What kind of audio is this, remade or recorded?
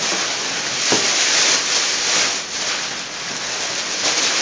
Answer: recorded